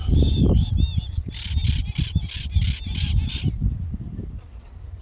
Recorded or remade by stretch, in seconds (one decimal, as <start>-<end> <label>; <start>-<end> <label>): 0.0-0.7 remade; 0.7-5.0 recorded